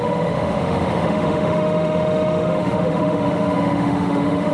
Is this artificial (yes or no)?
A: yes